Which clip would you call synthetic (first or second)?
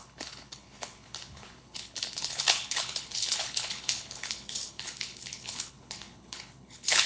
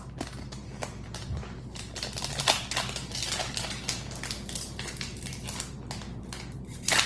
first